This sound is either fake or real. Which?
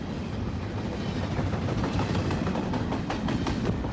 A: real